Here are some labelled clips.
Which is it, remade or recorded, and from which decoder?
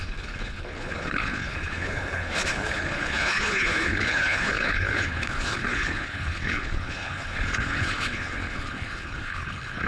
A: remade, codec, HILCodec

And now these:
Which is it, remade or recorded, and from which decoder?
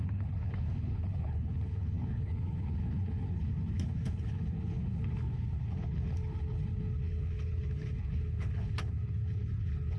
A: remade, codec, HILCodec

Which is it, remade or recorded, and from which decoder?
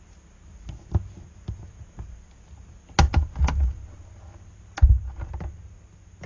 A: recorded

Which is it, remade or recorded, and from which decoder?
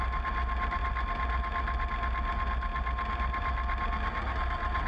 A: recorded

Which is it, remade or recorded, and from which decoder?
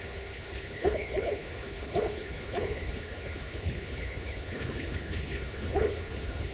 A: remade, codec, HILCodec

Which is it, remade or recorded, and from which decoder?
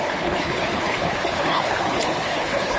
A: remade, codec, HILCodec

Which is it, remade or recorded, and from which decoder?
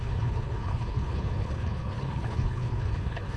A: remade, codec, HILCodec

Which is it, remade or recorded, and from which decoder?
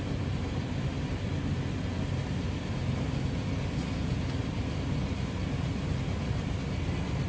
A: recorded